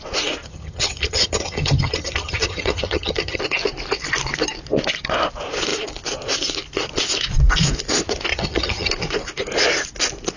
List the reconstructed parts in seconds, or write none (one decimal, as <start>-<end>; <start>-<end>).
0.4-3.4; 8.3-8.9